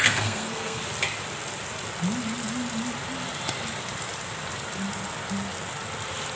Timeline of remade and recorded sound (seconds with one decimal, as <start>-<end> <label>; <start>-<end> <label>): 0.0-0.8 remade; 0.8-6.4 recorded